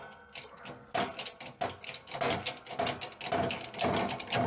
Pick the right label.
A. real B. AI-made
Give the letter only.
A